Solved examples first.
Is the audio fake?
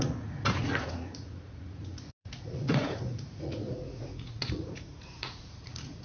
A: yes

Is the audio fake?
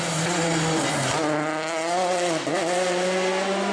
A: no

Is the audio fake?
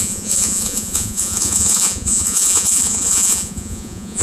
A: yes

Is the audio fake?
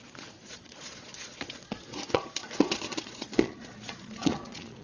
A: yes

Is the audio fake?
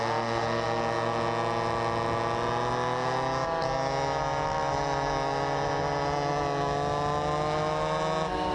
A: no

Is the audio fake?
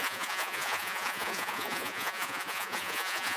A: yes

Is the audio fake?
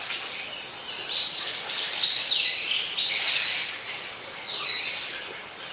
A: no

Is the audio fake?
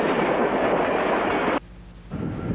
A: no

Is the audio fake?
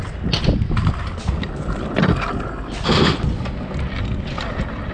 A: no